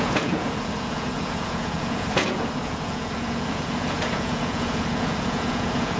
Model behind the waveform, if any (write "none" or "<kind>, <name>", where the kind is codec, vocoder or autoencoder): vocoder, Vocos